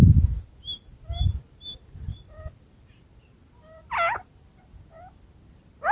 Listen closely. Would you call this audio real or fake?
real